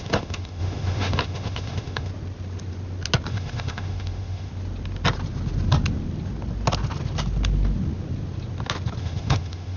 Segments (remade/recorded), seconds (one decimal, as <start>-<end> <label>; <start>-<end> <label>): 0.0-2.1 remade; 2.1-3.3 recorded; 3.3-4.5 remade; 4.5-9.0 recorded; 9.0-9.8 remade